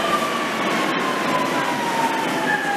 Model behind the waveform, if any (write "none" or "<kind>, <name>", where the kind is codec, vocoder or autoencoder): none